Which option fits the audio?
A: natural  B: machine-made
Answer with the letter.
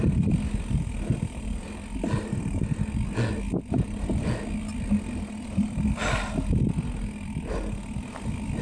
A